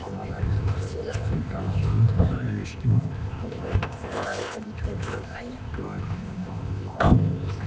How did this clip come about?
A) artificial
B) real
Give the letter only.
A